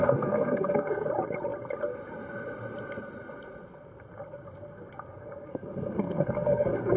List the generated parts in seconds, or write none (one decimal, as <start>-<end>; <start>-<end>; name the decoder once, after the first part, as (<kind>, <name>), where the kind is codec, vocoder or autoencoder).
0.0-1.1 (codec, SNAC); 5.5-7.0